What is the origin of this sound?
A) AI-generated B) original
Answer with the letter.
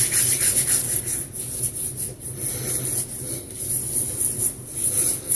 B